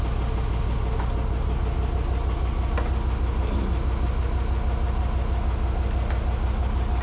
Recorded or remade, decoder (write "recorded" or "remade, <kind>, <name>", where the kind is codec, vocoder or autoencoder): recorded